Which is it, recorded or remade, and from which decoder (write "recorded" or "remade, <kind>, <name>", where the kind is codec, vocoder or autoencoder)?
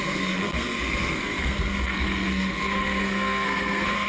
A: remade, codec, SNAC